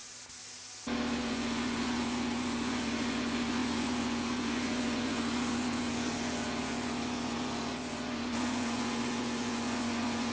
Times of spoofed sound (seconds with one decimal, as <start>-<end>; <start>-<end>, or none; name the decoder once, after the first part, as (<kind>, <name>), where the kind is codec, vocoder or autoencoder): 1.2-10.3 (vocoder, Vocos)